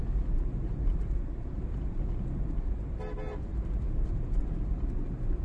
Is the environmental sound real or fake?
fake